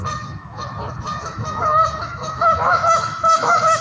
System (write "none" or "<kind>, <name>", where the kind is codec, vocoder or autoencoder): autoencoder, DAC-VAE